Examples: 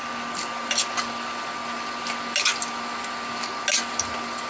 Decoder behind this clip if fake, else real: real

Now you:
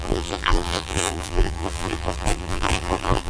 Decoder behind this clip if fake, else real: fake, vocoder, BigVGAN v2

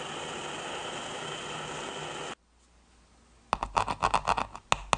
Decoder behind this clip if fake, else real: real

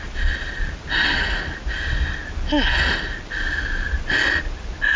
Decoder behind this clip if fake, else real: real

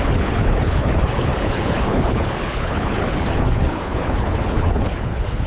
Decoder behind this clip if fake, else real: fake, codec, HILCodec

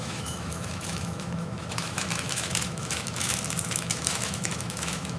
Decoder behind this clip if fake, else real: fake, autoencoder, DAC-VAE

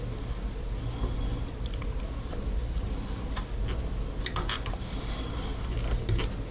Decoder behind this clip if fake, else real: real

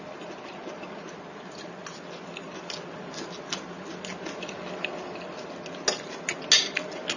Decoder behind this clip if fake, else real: real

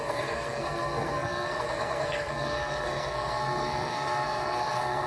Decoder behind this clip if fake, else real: fake, codec, SNAC